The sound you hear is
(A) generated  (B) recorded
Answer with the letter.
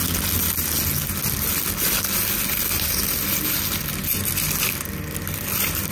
B